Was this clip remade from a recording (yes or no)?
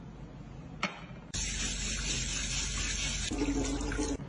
no